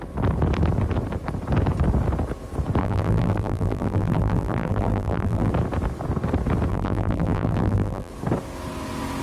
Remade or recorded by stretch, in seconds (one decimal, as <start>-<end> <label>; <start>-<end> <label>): 0.0-2.8 recorded; 2.8-5.5 remade; 5.5-6.7 recorded; 6.7-8.1 remade; 8.1-9.2 recorded